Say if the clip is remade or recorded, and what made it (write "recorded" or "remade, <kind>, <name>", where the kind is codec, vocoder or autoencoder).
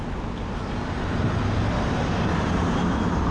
recorded